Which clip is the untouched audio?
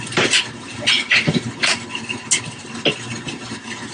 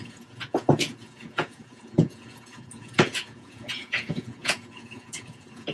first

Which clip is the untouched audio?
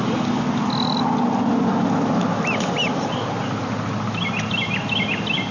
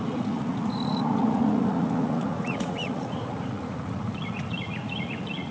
first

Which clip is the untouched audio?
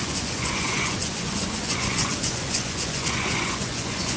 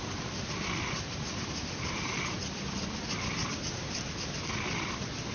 second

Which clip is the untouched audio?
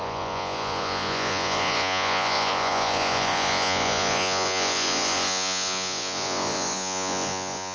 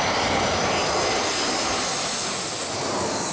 second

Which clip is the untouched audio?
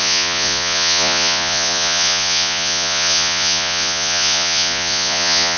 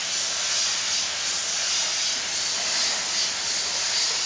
second